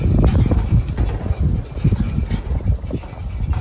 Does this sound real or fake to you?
real